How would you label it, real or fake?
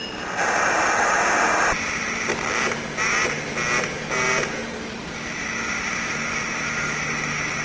real